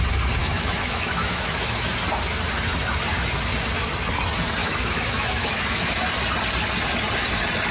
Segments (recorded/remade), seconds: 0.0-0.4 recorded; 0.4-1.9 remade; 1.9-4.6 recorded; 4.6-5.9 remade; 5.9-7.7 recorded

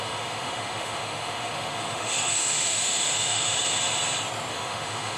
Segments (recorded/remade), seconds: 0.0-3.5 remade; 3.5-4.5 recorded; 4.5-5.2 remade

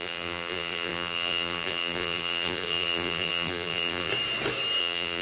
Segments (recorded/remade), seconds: 0.0-4.1 remade; 4.1-4.8 recorded; 4.8-5.2 remade

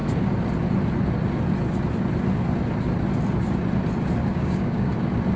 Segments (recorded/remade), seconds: 0.0-4.3 recorded; 4.3-4.9 remade; 4.9-5.4 recorded

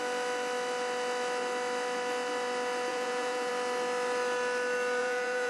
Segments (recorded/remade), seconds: 0.0-2.9 recorded; 2.9-3.5 remade; 3.5-5.0 recorded; 5.0-5.5 remade